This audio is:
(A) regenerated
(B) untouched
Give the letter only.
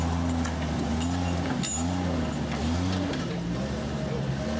B